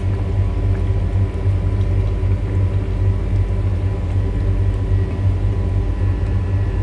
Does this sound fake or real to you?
real